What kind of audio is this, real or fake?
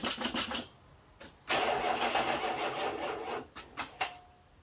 real